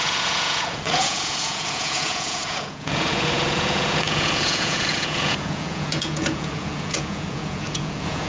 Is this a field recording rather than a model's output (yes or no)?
no